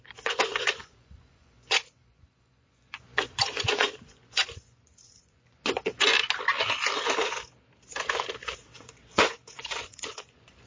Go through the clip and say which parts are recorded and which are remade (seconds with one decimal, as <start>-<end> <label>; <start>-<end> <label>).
0.0-5.9 remade; 5.9-8.8 recorded; 8.8-10.7 remade